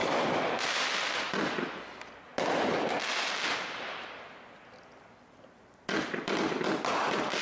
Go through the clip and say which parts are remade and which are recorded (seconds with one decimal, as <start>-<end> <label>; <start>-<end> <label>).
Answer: 0.0-1.1 remade; 1.1-7.4 recorded